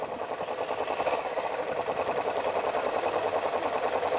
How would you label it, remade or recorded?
recorded